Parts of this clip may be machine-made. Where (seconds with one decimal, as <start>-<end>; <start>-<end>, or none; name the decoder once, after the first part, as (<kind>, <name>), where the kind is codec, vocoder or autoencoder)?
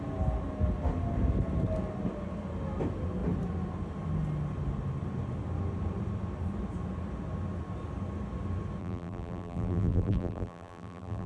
8.8-11.3 (vocoder, BigVGAN v2)